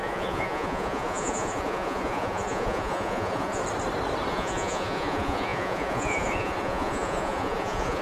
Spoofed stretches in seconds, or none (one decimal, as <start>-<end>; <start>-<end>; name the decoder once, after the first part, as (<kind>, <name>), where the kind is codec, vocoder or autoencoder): 0.0-3.6 (vocoder, Vocos); 4.3-8.0